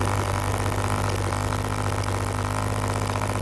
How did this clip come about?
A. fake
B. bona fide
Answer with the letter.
B